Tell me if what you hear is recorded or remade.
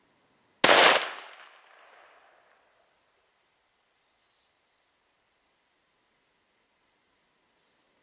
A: recorded